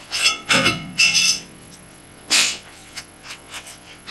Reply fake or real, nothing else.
fake